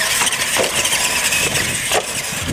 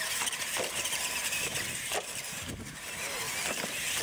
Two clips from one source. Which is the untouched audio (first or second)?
first